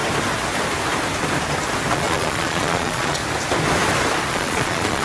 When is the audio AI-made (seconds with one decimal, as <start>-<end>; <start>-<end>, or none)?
1.9-3.2; 4.3-5.0